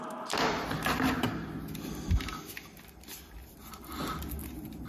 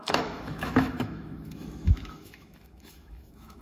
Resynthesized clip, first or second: second